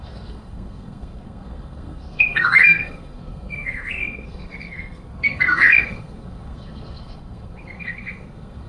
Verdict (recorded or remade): remade